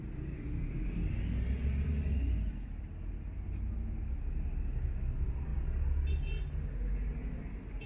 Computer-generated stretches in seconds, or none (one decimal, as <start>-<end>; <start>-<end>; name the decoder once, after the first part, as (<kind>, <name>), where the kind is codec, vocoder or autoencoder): none